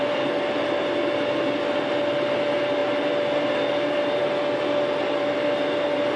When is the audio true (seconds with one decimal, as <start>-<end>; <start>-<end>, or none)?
0.0-6.2